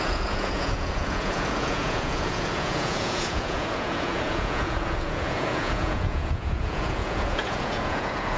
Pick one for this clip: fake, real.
fake